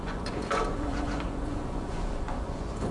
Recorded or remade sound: remade